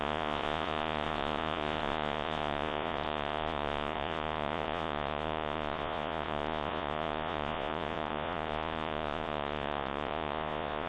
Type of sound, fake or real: fake